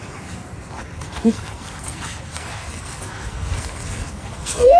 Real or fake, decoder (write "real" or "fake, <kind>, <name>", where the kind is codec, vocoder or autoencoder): fake, codec, SNAC